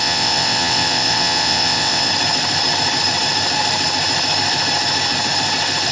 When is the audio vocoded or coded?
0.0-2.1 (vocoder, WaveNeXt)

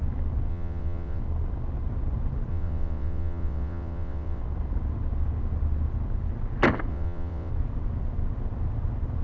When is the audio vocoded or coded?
0.5-1.2 (vocoder, WaveNeXt); 2.5-4.4; 6.9-7.5

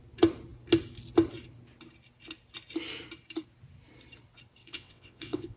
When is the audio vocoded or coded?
4.6-5.6 (vocoder, WaveNeXt)

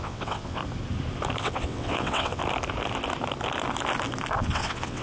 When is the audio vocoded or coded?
0.0-0.6 (vocoder, WaveNeXt); 1.4-2.4; 4.4-5.0

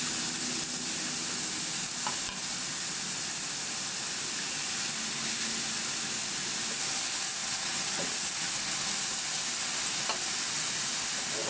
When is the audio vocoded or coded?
7.4-8.5 (vocoder, WaveNeXt)